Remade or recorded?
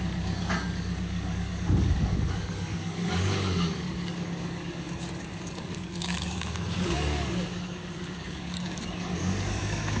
remade